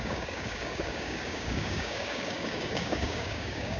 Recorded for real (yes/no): no